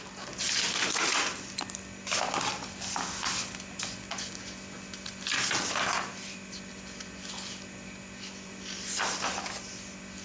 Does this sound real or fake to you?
real